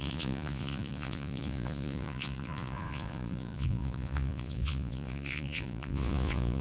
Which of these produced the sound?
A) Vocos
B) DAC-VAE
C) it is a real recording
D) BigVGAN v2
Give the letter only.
A